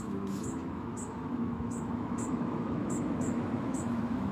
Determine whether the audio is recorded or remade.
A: remade